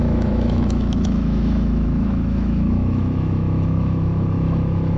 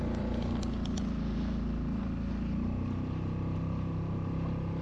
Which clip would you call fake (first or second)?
first